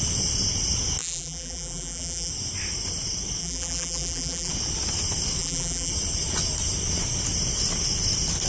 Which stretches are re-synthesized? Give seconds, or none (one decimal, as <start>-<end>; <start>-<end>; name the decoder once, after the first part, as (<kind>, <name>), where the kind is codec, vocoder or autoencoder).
1.0-2.3 (vocoder, BigVGAN v2); 3.4-4.5; 5.4-5.9